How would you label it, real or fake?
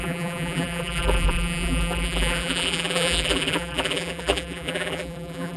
fake